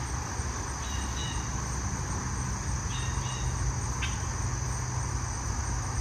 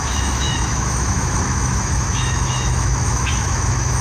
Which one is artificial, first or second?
second